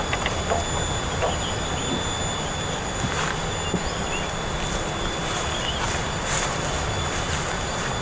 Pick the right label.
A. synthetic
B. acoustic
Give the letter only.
B